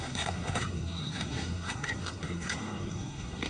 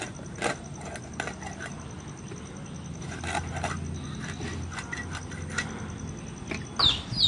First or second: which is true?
second